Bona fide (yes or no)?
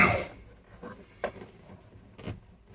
yes